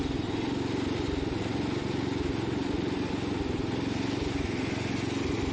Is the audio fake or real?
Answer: real